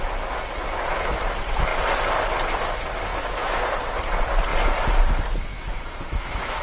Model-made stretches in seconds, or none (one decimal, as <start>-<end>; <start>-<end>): 3.1-3.6; 5.5-6.6